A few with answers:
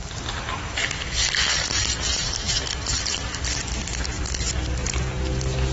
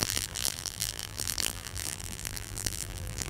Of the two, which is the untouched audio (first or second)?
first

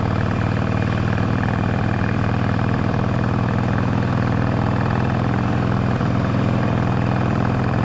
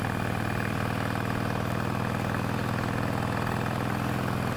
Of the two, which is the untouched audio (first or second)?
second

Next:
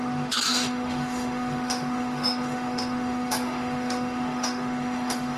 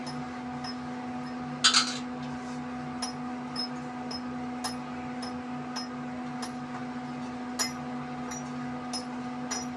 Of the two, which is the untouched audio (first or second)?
second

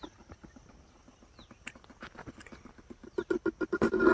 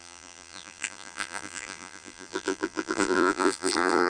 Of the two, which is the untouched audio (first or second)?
first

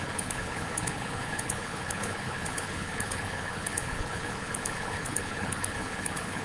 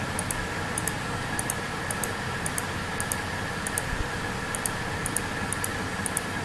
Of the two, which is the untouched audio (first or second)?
second